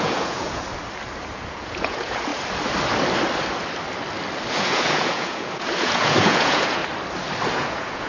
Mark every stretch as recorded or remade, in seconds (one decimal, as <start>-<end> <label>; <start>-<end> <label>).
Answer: 0.0-0.6 remade; 0.6-1.3 recorded; 1.3-2.3 remade; 2.3-4.5 recorded; 4.5-6.8 remade; 6.8-7.5 recorded; 7.5-8.1 remade